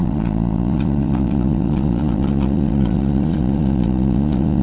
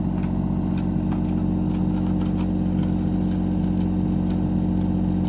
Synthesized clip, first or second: first